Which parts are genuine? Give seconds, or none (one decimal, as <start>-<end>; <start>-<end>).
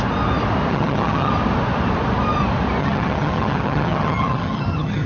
0.0-0.7; 1.3-2.8